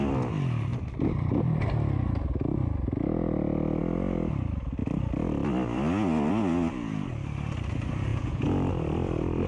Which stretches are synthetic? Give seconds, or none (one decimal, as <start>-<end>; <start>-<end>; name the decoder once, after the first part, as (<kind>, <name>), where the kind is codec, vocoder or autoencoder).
8.1-8.7 (vocoder, Vocos)